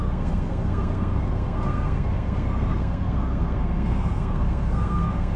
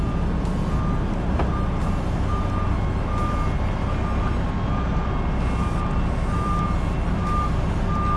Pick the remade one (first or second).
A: first